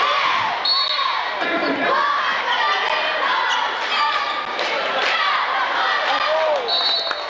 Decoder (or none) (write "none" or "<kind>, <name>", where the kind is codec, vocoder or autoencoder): none